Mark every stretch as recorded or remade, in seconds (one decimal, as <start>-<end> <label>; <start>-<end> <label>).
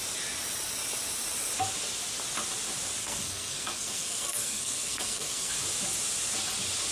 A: 0.0-3.0 recorded; 3.0-5.5 remade; 5.5-6.9 recorded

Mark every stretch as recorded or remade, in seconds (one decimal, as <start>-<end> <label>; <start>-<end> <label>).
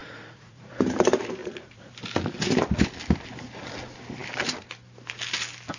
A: 0.0-0.7 remade; 0.7-1.4 recorded; 1.4-1.9 remade; 1.9-5.8 recorded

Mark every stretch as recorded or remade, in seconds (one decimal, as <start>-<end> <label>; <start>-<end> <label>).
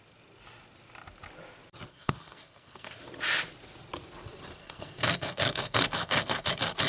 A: 0.0-1.9 recorded; 1.9-2.9 remade; 2.9-4.6 recorded; 4.6-6.5 remade; 6.5-6.9 recorded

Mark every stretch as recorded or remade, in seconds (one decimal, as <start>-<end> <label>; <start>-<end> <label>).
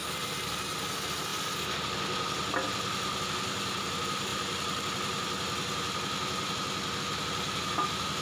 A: 0.0-8.2 recorded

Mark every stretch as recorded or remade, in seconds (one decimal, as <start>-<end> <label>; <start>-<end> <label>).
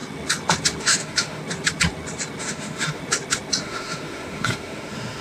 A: 0.0-0.8 recorded; 0.8-1.4 remade; 1.4-2.4 recorded; 2.4-3.0 remade; 3.0-3.6 recorded; 3.6-5.2 remade